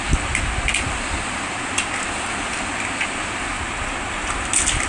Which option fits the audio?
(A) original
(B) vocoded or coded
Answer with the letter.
A